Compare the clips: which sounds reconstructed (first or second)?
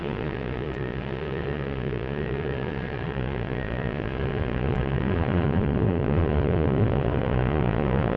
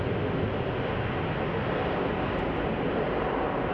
first